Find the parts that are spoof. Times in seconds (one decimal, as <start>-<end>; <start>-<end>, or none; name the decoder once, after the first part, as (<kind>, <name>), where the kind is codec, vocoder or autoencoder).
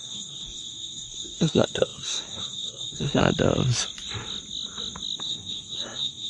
0.0-3.2 (codec, SNAC); 5.2-6.3